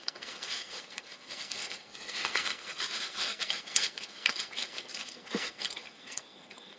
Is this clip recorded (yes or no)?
no